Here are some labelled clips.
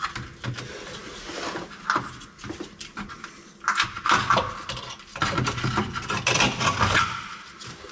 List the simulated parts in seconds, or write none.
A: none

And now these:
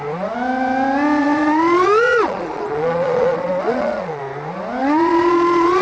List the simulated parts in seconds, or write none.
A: 1.2-4.2; 4.8-5.8